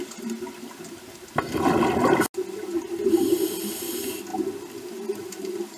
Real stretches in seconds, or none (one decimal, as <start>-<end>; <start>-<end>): 0.0-5.8